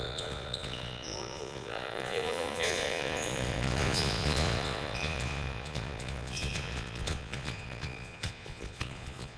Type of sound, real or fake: fake